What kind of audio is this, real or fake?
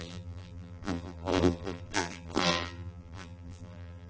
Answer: fake